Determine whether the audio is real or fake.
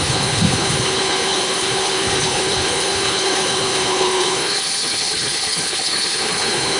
fake